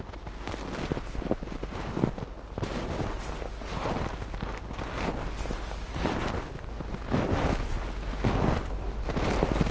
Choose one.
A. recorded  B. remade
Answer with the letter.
A